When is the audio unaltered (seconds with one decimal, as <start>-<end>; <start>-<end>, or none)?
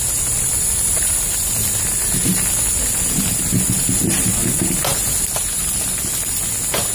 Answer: 0.0-4.9; 5.6-6.9